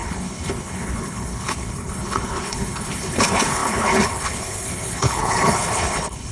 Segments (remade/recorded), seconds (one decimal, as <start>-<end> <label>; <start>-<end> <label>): 0.0-6.3 remade